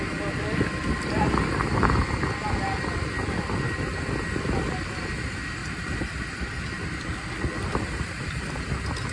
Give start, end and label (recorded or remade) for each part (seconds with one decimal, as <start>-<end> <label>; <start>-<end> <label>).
0.0-5.6 recorded; 5.6-6.6 remade; 6.6-9.1 recorded